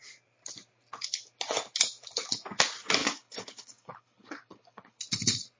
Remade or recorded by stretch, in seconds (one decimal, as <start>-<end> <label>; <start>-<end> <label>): 0.0-3.0 recorded; 3.0-5.0 remade; 5.0-5.6 recorded